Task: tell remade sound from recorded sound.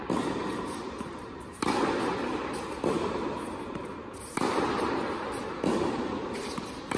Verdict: recorded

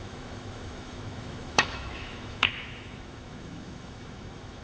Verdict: remade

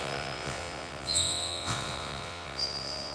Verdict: remade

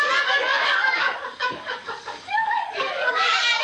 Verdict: remade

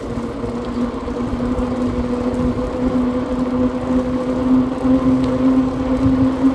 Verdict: recorded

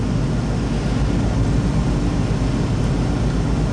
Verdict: recorded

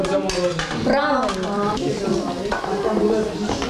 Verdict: recorded